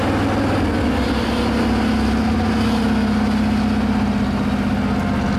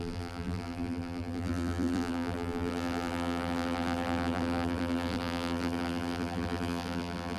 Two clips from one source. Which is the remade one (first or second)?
second